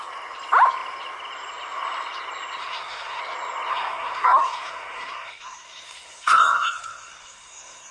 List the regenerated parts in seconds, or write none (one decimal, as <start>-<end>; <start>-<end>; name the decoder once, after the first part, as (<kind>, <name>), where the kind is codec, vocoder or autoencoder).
2.6-3.2 (codec, SNAC); 3.7-7.9